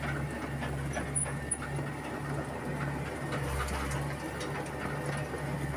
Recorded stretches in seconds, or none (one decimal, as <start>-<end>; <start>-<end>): 0.0-5.8